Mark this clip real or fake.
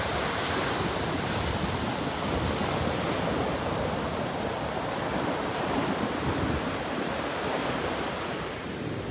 real